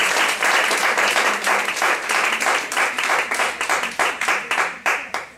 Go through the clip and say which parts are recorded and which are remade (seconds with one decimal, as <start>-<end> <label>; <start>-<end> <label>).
0.0-0.7 recorded; 0.7-5.4 remade